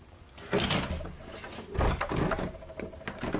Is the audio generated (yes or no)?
no